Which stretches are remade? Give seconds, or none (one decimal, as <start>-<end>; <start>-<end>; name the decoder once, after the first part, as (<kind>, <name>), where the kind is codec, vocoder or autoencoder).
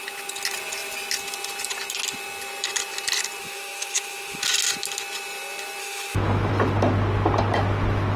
3.4-4.4 (autoencoder, DAC-VAE); 5.8-6.5